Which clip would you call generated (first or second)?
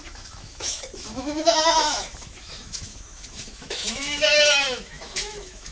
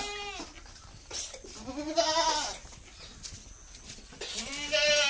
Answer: first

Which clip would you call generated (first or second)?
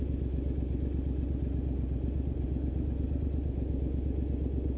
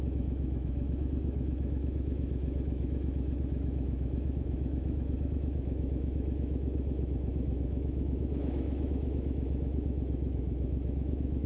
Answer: second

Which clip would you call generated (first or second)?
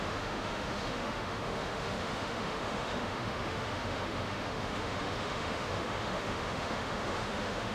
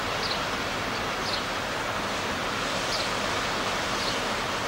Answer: first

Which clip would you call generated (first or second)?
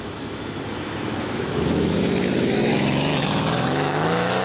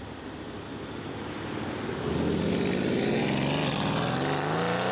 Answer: first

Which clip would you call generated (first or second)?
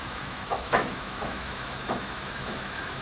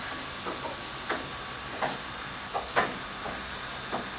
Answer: first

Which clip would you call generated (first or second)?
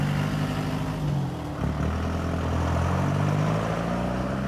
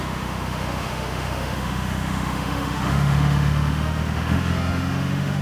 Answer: second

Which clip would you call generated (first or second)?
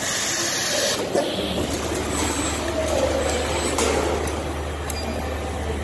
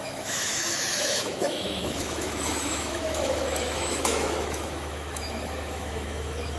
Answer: second